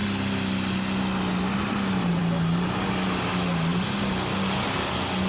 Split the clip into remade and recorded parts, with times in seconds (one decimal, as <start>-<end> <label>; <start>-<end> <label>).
0.0-5.3 recorded